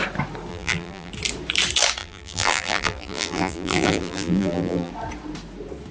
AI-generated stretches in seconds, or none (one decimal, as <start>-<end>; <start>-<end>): 0.5-1.1; 2.0-4.9